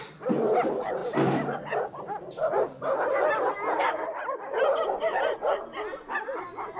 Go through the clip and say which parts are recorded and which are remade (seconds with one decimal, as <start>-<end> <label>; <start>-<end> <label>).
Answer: 0.0-0.6 remade; 0.6-1.0 recorded; 1.0-2.0 remade; 2.0-2.4 recorded; 2.4-6.8 remade